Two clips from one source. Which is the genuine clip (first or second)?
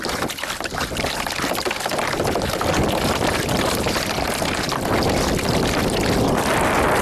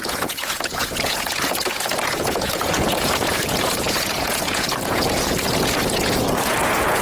first